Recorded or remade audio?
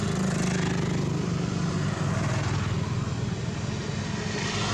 recorded